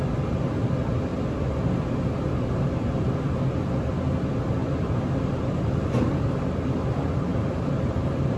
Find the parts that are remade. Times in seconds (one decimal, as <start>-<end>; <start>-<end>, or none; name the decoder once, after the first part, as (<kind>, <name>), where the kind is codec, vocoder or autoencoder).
1.1-2.1 (vocoder, BigVGAN v2); 4.6-6.4; 7.3-8.4